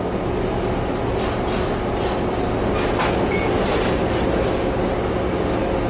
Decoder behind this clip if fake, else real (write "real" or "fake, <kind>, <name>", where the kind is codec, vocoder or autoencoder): real